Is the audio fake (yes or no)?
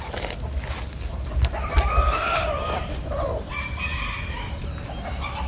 no